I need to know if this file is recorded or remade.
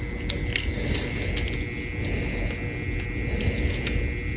recorded